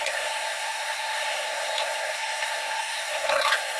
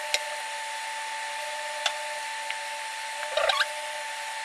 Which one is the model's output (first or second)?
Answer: first